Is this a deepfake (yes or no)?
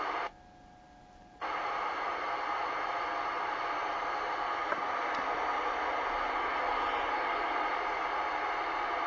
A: no